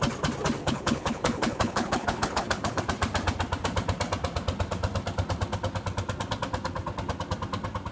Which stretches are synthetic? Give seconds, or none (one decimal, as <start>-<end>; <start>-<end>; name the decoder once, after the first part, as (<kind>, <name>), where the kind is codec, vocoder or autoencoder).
0.6-2.8 (codec, HILCodec)